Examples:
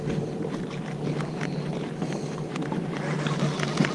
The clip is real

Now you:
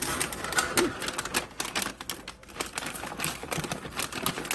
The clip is real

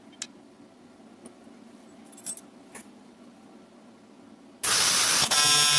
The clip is real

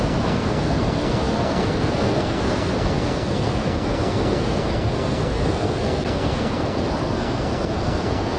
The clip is fake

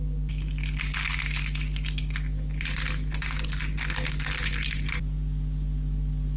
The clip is real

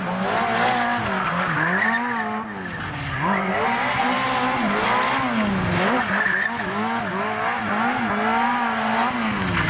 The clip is real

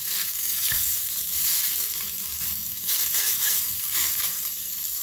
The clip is fake